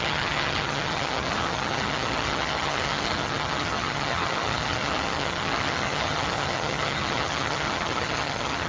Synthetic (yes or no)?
yes